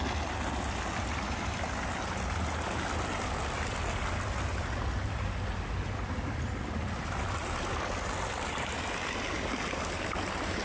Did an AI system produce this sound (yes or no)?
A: no